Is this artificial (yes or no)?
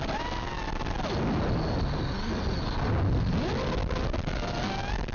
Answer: no